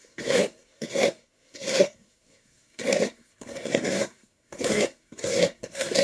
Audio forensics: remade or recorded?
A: remade